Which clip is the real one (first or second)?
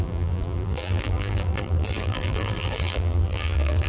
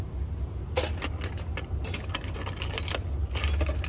second